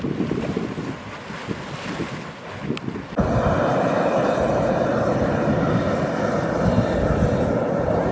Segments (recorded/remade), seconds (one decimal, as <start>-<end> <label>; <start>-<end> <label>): 0.0-3.7 recorded; 3.7-4.9 remade; 4.9-8.1 recorded